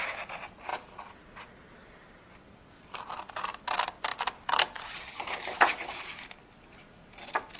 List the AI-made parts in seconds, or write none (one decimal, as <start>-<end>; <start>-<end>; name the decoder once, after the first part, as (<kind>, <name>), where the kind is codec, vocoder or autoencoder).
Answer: none